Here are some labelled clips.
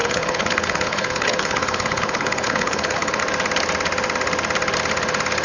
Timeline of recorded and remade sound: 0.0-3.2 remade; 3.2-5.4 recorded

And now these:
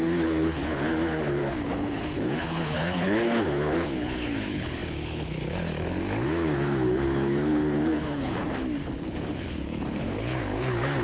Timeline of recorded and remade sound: 0.0-8.4 remade; 8.4-9.0 recorded; 9.0-11.0 remade

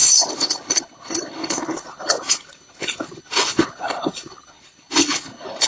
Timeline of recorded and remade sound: 0.0-5.7 remade

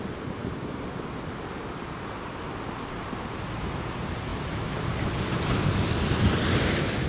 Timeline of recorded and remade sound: 0.0-7.1 recorded

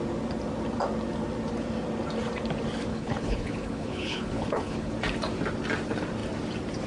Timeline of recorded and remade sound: 0.0-2.9 recorded; 2.9-4.9 remade; 4.9-6.9 recorded

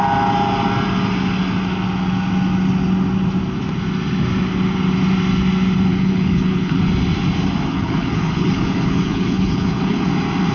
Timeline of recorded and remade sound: 0.0-5.9 recorded; 5.9-6.8 remade; 6.8-7.7 recorded; 7.7-10.1 remade; 10.1-10.5 recorded